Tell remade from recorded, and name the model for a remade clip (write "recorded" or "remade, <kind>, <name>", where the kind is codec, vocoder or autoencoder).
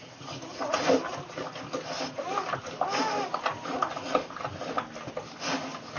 recorded